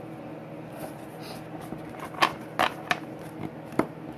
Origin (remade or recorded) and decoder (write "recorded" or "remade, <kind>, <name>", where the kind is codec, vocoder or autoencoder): recorded